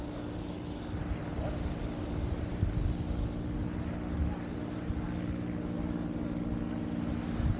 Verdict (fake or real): real